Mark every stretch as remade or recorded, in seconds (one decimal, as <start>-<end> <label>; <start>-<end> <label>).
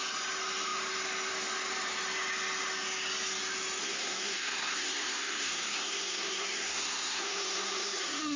0.0-3.8 recorded; 3.8-8.4 remade